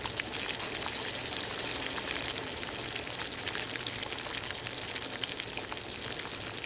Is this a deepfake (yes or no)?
no